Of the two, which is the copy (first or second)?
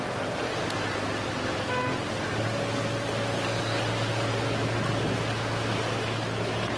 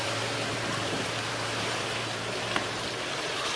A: second